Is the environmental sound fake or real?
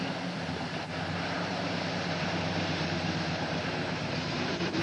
fake